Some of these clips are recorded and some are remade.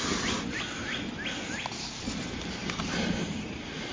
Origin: recorded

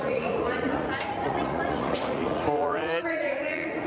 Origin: remade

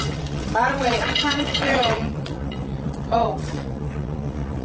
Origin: remade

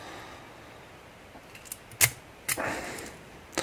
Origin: recorded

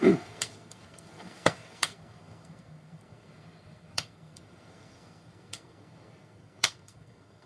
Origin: remade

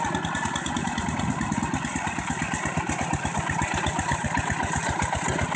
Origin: recorded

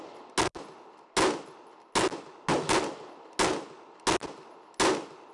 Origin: recorded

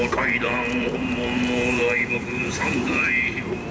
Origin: remade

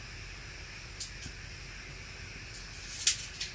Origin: recorded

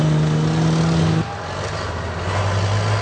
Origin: recorded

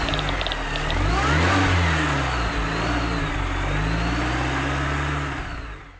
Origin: recorded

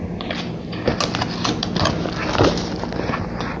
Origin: recorded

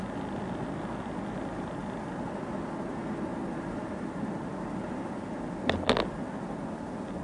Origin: recorded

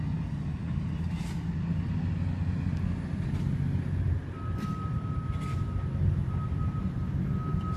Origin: recorded